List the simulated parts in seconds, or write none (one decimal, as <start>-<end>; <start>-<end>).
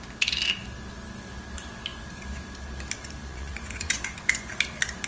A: 3.2-4.5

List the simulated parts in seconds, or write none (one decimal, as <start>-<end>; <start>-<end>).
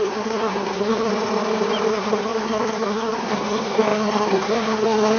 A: 0.0-1.1; 1.9-5.2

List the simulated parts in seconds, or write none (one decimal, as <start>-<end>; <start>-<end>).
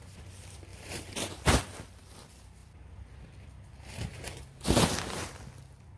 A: 0.7-1.6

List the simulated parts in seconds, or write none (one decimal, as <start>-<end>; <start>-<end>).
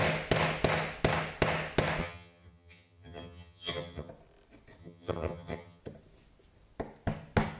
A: 2.0-4.1; 4.8-5.8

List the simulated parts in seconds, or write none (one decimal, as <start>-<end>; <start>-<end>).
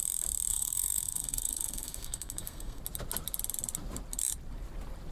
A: 0.5-2.8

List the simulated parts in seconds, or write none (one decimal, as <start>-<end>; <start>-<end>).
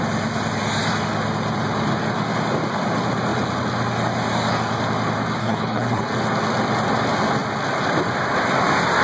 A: 5.4-6.1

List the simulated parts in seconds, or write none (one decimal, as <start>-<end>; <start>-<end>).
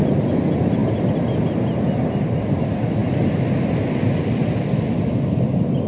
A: none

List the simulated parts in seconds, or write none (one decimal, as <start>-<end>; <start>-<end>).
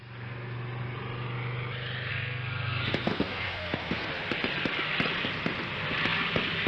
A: 2.1-4.1